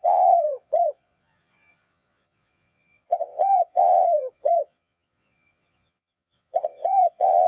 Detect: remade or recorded remade